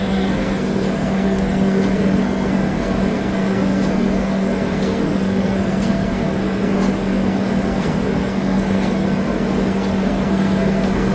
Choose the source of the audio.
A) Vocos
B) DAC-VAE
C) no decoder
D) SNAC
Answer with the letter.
D